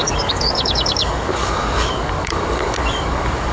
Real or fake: fake